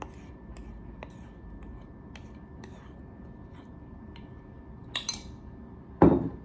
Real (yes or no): yes